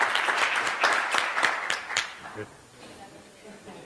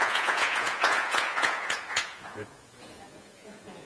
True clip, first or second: first